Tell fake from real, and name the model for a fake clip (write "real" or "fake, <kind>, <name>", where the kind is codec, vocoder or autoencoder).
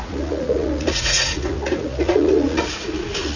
fake, vocoder, Vocos